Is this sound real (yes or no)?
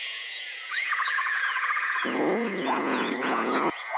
no